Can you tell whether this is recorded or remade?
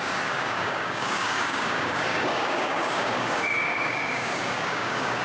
remade